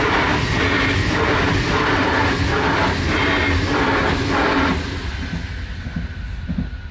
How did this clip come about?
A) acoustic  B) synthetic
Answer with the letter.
A